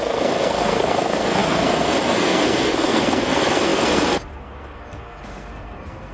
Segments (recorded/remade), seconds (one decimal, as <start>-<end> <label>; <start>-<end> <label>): 0.0-6.1 remade